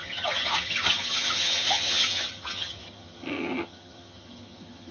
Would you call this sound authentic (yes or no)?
no